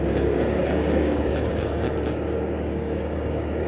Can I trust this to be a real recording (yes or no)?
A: no